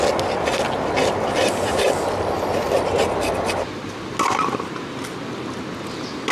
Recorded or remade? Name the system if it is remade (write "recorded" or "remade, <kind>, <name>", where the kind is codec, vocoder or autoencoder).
recorded